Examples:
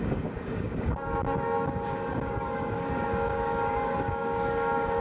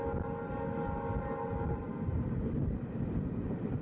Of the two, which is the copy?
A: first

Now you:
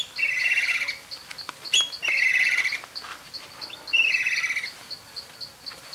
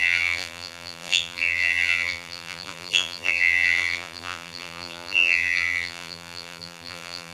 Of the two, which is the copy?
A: second